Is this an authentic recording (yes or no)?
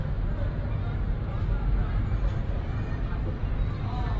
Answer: yes